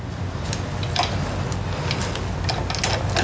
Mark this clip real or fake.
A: real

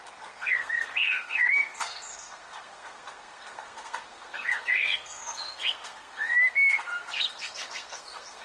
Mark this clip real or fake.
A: fake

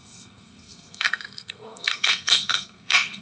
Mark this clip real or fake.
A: fake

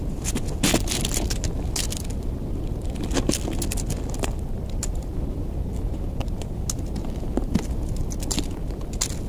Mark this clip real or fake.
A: real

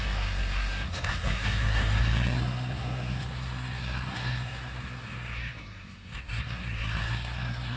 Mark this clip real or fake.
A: fake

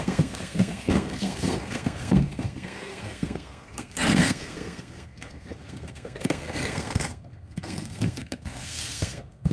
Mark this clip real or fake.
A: fake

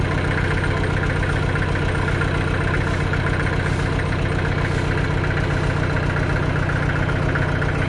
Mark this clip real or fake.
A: real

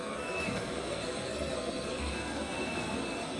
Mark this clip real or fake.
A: fake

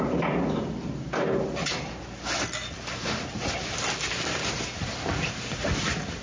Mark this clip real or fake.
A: real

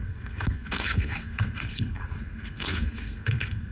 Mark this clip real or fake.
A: fake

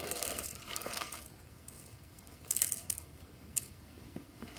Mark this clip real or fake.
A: fake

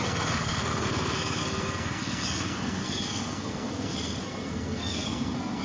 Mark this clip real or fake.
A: fake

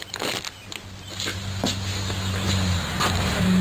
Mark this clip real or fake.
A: real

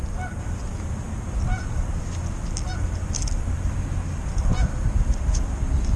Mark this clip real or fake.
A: real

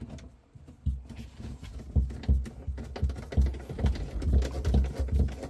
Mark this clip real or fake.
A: real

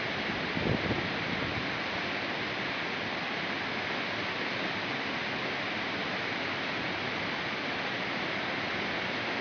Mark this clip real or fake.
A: real